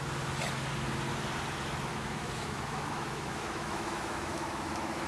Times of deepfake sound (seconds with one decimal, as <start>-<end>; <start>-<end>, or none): 1.9-5.1